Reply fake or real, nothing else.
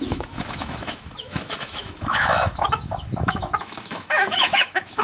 fake